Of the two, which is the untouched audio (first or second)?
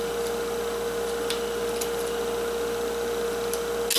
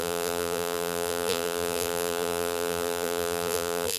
first